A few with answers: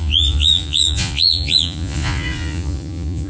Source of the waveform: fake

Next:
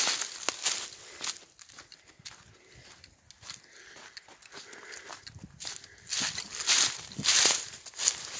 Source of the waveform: real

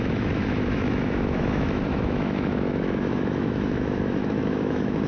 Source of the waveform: fake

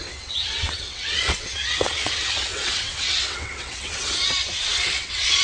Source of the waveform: fake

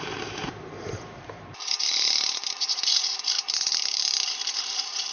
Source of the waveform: fake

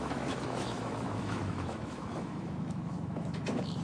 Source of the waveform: fake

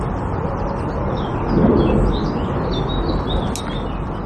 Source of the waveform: real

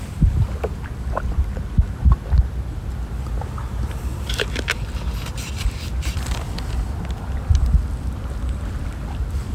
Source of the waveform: real